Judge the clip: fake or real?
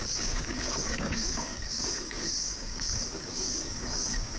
fake